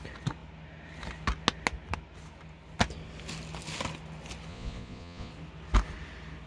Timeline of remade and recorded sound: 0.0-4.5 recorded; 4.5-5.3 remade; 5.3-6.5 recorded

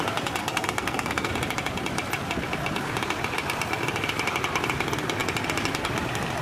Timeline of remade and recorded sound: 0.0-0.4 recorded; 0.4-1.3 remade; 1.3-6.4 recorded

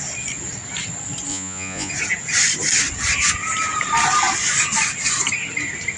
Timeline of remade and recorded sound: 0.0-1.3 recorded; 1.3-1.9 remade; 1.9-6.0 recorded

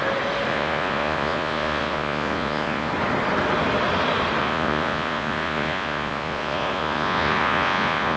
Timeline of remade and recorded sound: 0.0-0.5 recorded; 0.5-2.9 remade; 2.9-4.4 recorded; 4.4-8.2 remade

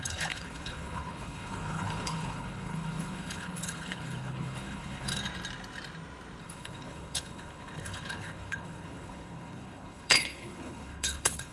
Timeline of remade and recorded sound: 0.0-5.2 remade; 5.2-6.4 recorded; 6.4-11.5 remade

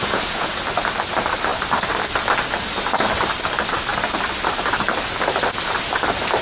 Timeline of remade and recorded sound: 0.0-0.6 remade; 0.6-6.4 recorded